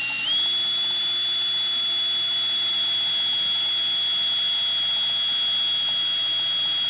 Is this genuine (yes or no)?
yes